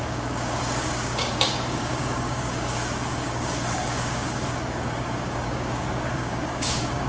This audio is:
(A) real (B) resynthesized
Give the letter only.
B